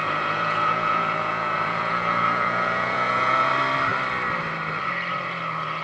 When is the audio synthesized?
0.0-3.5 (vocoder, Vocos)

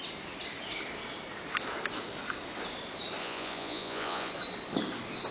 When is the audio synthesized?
3.2-4.3 (vocoder, Vocos)

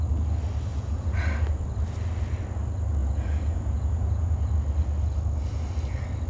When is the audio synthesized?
0.7-1.2 (vocoder, Vocos); 3.0-4.5

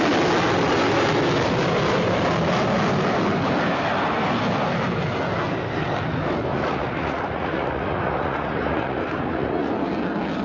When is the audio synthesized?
6.5-9.7 (vocoder, Vocos)

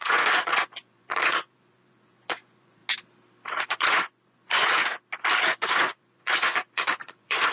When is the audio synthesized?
0.0-2.8 (vocoder, Vocos); 3.6-4.8; 5.4-7.5